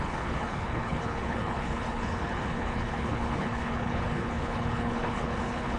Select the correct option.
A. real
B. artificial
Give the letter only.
B